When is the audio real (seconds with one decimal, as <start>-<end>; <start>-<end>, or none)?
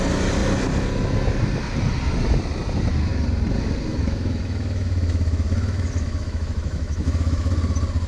0.0-3.9; 7.5-8.1